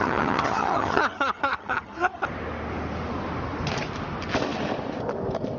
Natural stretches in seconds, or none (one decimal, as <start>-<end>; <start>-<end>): 2.2-5.6